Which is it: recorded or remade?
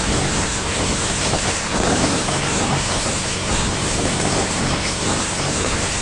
remade